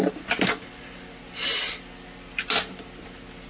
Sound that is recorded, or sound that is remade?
recorded